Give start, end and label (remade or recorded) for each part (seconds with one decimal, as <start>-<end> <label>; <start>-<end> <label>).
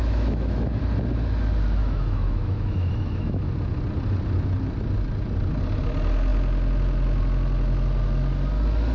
0.0-0.8 remade; 0.8-1.8 recorded; 1.8-3.5 remade; 3.5-8.9 recorded